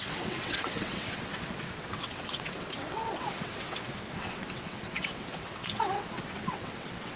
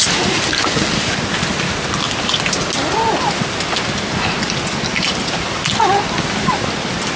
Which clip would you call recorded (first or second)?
second